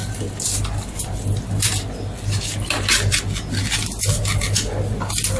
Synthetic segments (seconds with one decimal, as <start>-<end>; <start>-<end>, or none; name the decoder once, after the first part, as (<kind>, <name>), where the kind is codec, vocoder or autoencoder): none